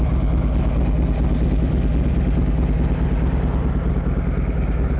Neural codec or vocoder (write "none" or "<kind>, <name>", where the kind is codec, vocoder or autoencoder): none